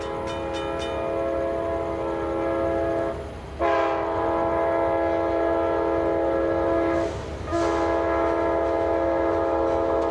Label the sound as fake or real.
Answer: real